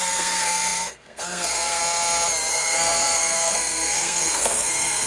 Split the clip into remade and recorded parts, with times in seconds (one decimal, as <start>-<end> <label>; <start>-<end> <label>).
0.0-1.8 remade; 1.8-2.5 recorded; 2.5-5.1 remade